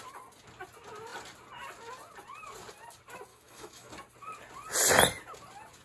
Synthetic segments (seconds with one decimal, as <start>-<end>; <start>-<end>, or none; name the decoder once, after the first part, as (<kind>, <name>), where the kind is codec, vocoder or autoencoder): 3.3-3.9 (autoencoder, DAC-VAE)